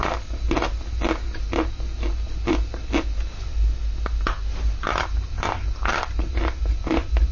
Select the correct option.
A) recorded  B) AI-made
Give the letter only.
A